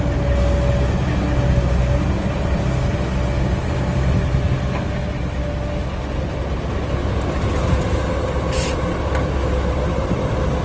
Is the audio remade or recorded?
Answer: recorded